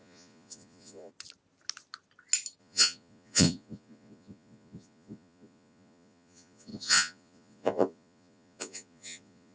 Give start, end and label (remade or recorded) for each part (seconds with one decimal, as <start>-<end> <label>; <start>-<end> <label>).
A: 0.0-1.1 remade; 1.1-2.6 recorded; 2.6-9.5 remade